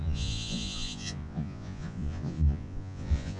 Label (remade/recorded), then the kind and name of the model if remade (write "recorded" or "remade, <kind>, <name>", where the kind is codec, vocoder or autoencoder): remade, vocoder, Vocos